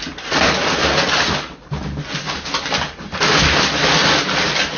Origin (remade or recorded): recorded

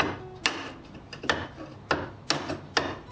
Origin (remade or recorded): recorded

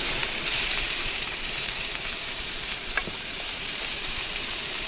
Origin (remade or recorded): remade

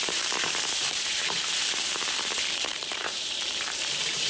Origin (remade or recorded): remade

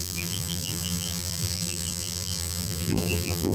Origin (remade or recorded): remade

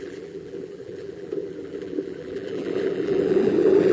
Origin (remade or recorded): remade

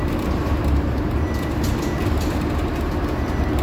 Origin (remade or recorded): recorded